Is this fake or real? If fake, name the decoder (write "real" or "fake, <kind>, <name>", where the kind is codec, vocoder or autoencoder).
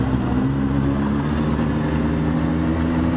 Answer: real